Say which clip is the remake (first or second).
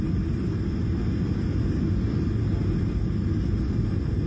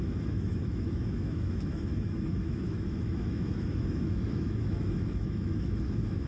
second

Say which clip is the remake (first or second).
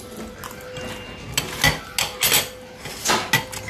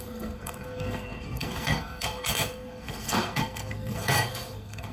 second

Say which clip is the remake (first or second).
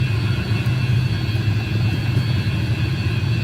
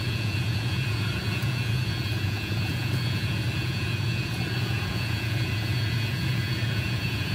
second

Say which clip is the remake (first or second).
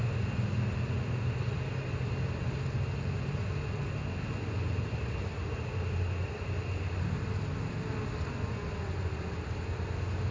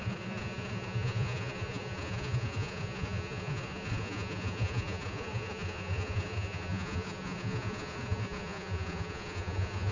second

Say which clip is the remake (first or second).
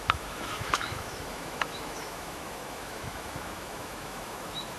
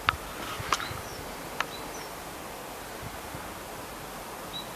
first